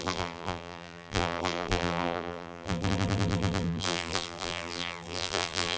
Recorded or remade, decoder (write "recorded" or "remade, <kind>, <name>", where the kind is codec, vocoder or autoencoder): remade, vocoder, BigVGAN v2